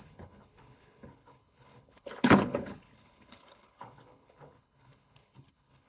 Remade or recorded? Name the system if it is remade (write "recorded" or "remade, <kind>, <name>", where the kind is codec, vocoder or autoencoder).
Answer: remade, codec, HILCodec